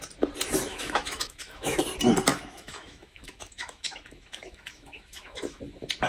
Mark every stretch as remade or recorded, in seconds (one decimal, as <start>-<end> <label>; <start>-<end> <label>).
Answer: 0.0-0.7 recorded; 0.7-1.8 remade; 1.8-2.3 recorded; 2.3-5.6 remade; 5.6-6.1 recorded